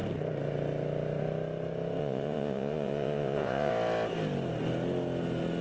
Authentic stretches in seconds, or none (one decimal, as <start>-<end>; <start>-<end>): 0.0-2.0; 3.7-5.6

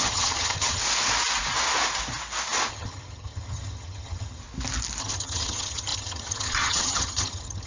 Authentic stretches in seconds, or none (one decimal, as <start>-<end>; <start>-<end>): 0.8-2.7; 4.4-5.0

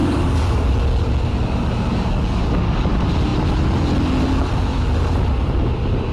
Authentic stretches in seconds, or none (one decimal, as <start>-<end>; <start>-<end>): 0.7-1.9; 2.9-6.1

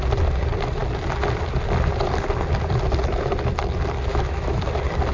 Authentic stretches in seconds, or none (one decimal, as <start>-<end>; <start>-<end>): 0.0-4.1; 4.6-5.1

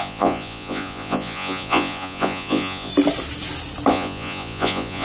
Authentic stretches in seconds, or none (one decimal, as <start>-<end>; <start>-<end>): 2.9-3.9

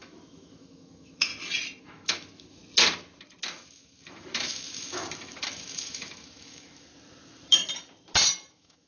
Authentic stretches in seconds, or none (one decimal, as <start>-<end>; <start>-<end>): 1.3-1.8; 2.6-3.5; 6.9-8.5

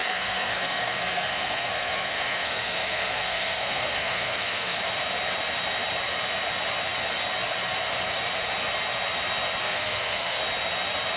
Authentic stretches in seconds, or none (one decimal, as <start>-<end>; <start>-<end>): 4.8-9.6; 10.4-11.2

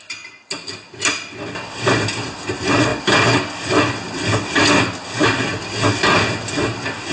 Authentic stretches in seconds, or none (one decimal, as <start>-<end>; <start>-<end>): 0.0-7.1